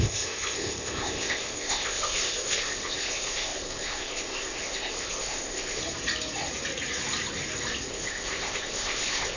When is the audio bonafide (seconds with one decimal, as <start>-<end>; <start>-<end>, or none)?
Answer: 5.8-7.9